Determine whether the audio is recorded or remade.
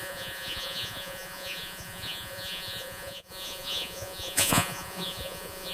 remade